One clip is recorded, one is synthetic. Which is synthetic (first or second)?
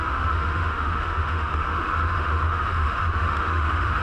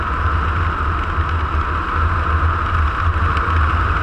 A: first